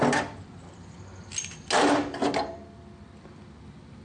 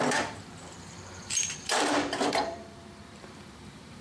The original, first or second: first